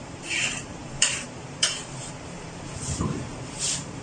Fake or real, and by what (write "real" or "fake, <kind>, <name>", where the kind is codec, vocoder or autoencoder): fake, vocoder, BigVGAN v2